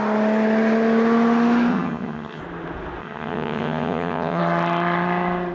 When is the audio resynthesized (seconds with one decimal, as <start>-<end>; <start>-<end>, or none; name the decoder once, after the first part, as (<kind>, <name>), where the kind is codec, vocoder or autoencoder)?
1.7-2.4 (vocoder, HiFi-GAN); 3.0-4.4